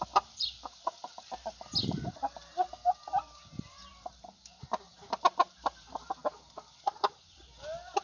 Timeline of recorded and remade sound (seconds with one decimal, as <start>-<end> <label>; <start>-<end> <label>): 0.0-8.0 recorded